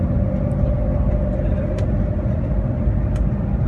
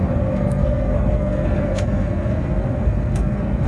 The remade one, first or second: second